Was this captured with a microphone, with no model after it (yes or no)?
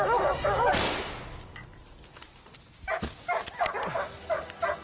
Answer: yes